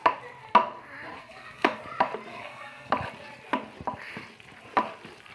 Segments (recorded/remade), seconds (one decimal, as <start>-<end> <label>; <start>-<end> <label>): 0.0-1.2 recorded; 1.2-1.8 remade; 1.8-2.3 recorded; 2.3-2.9 remade; 2.9-5.3 recorded